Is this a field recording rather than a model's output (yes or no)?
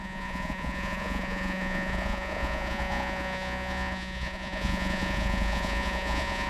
no